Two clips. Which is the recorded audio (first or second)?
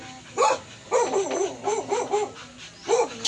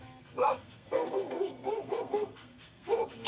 first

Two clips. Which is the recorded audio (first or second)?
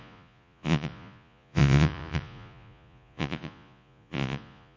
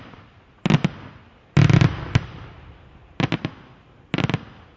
second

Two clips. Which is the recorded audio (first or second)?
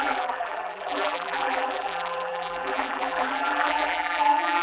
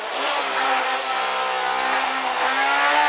second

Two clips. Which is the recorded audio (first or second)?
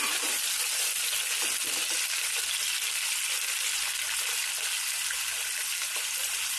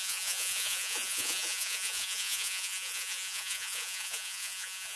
first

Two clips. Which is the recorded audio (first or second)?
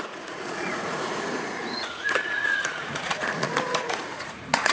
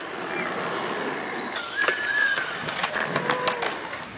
second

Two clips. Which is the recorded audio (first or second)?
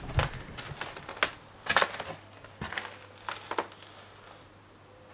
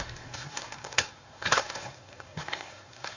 first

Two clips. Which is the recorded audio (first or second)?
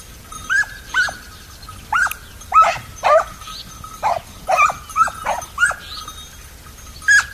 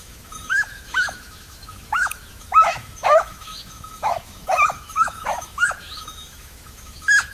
first